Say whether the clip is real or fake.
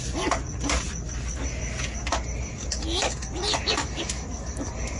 real